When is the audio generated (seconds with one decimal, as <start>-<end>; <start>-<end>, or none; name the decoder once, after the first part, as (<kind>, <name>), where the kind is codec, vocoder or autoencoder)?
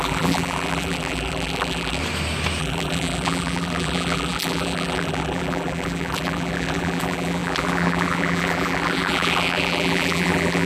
0.0-2.0 (vocoder, BigVGAN v2); 2.6-10.7